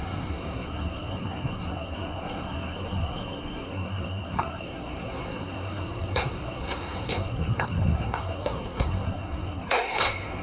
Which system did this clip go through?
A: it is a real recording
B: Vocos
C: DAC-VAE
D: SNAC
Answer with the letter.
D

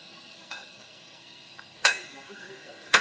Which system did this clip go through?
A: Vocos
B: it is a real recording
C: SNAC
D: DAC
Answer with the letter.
C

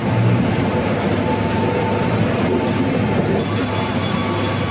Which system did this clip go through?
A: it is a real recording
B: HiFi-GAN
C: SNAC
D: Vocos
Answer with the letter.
A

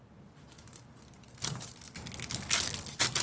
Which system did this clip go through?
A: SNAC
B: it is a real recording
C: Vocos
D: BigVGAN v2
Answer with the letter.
B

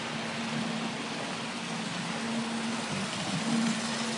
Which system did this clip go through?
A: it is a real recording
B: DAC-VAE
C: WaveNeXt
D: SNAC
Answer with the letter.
A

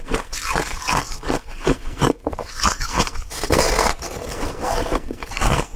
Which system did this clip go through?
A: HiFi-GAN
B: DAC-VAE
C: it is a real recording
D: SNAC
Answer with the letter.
D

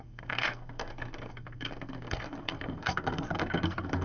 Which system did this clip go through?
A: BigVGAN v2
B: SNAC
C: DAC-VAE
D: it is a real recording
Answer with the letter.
B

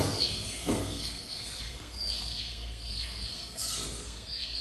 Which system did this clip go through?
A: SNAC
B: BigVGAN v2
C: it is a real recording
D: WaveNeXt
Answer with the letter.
A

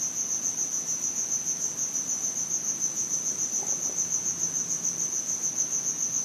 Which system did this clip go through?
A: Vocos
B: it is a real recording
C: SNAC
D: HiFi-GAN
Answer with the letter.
B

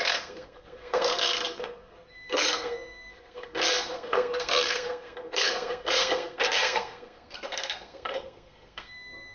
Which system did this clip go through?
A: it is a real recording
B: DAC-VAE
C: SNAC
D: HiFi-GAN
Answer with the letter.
C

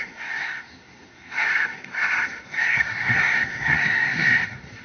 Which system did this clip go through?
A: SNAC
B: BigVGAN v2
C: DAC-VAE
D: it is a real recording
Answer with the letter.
A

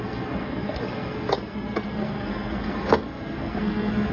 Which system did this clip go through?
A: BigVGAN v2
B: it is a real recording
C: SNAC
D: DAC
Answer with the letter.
C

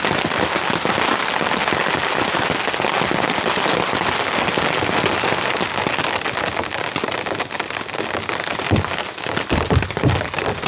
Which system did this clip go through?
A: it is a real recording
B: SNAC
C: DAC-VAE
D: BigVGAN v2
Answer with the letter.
A